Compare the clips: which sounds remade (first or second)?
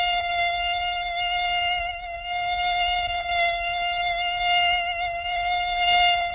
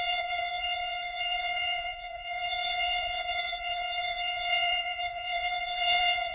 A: second